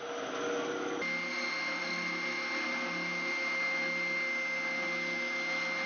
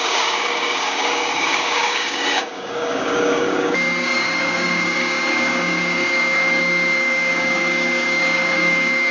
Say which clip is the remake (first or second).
second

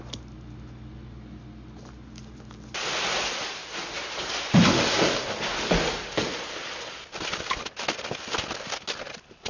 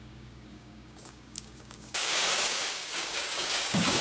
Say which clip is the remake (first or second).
second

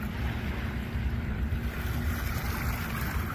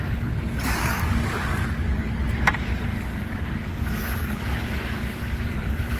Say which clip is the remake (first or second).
second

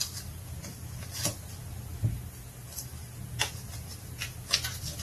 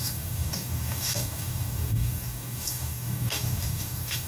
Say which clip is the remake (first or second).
second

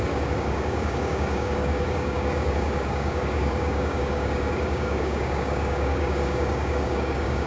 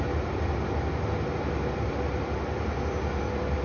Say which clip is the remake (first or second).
first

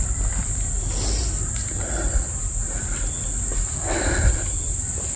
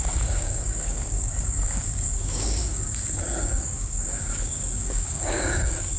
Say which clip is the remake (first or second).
second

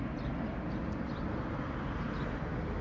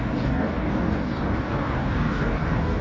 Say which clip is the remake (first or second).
second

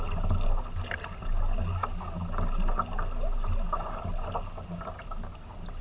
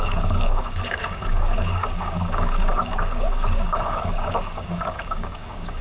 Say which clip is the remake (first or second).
second